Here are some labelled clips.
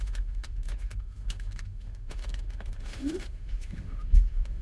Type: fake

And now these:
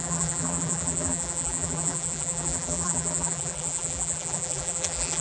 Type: fake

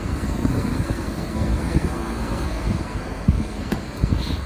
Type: fake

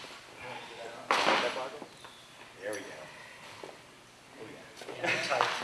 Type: real